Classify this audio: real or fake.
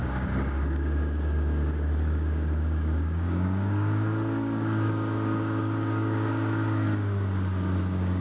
fake